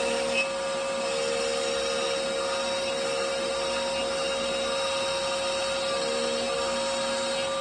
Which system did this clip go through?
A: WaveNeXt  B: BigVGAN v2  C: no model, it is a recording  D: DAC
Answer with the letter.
C